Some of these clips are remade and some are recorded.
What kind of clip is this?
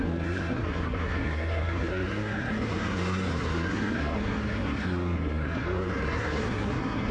remade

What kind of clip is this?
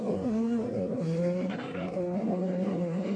remade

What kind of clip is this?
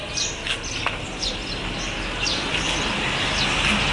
recorded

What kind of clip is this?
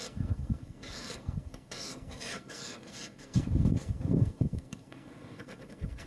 remade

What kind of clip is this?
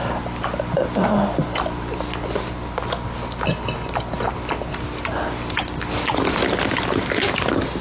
recorded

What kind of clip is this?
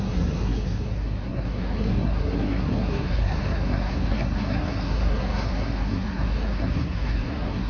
remade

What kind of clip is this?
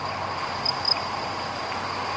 recorded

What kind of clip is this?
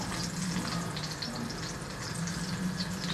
recorded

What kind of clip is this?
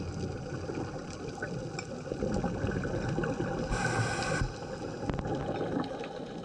recorded